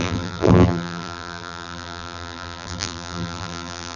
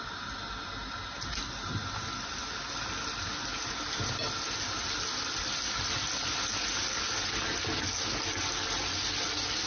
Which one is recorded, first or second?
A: second